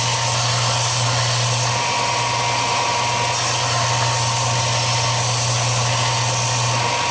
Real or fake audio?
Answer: real